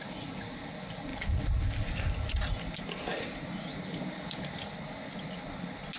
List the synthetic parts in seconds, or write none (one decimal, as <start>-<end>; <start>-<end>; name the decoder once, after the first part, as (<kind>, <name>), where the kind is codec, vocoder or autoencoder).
none